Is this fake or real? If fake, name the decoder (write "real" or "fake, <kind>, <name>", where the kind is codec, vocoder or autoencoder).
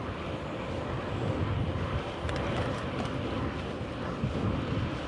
real